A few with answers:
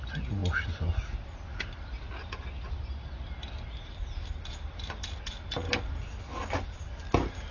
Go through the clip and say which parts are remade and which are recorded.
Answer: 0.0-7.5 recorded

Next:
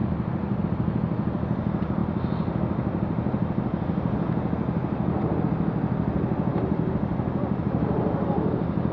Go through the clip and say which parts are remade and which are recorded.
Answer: 0.0-8.9 recorded

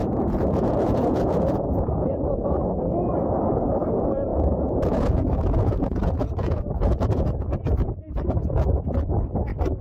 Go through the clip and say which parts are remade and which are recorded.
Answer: 0.0-2.6 remade; 2.6-4.3 recorded; 4.3-9.1 remade; 9.1-9.8 recorded

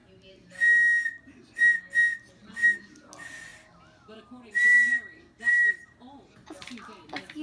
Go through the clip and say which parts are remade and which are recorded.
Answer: 0.0-7.4 recorded

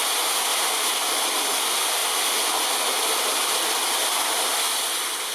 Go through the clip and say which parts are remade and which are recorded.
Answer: 0.0-0.5 recorded; 0.5-1.1 remade; 1.1-5.3 recorded

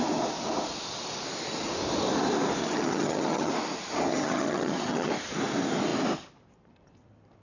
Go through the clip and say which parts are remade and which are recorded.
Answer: 0.0-2.6 recorded; 2.6-3.5 remade; 3.5-4.1 recorded; 4.1-5.1 remade; 5.1-7.4 recorded

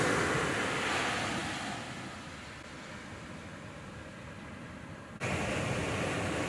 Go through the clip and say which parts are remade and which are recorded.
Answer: 0.0-6.5 recorded